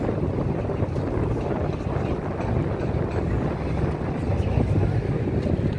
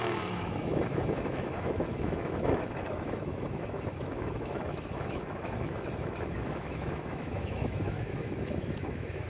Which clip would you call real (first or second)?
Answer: first